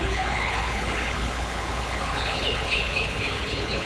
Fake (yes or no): yes